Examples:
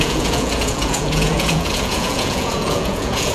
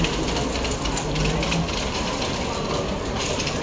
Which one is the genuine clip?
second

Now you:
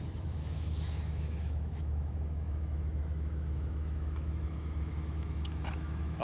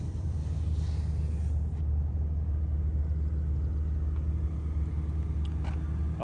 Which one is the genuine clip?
second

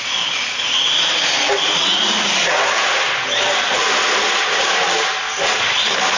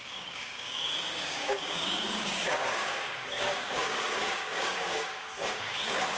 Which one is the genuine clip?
first